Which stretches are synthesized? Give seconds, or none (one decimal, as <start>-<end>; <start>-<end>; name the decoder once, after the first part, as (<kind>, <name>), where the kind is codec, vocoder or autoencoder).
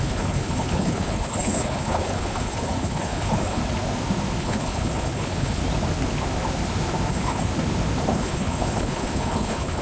0.0-3.6 (codec, HILCodec); 4.4-5.6; 7.1-7.5; 8.1-9.8